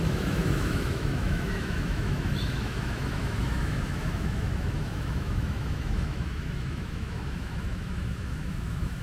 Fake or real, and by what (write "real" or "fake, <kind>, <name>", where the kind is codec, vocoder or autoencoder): fake, autoencoder, DAC-VAE